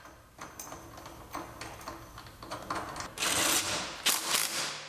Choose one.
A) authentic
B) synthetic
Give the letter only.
A